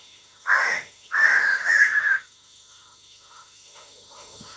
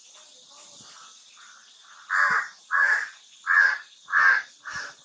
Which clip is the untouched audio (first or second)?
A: second